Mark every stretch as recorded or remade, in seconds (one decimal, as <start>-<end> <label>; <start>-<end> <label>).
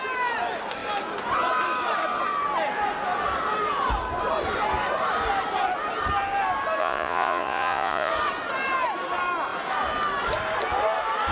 0.0-6.8 recorded; 6.8-8.1 remade; 8.1-11.3 recorded